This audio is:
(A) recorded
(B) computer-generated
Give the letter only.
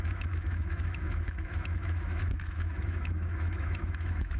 B